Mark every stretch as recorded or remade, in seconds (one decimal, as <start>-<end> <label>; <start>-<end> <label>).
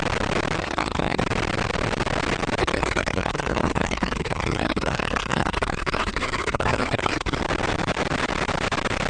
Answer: 0.0-0.6 recorded; 0.6-1.2 remade; 1.2-2.6 recorded; 2.6-7.4 remade; 7.4-9.1 recorded